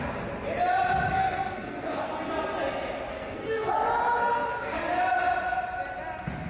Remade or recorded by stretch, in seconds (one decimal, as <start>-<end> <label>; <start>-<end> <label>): 0.0-1.2 recorded; 1.2-2.1 remade; 2.1-3.1 recorded; 3.1-3.7 remade; 3.7-4.2 recorded; 4.2-4.8 remade; 4.8-6.5 recorded

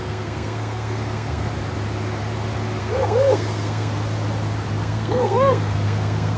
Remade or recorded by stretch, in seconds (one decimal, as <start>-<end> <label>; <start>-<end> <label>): 0.0-1.5 remade; 1.5-2.8 recorded; 2.8-3.9 remade; 3.9-4.8 recorded; 4.8-6.4 remade